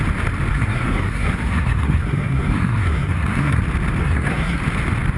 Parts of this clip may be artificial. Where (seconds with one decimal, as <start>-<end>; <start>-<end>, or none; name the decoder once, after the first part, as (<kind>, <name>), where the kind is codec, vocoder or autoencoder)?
0.5-3.6 (codec, SNAC); 4.0-4.6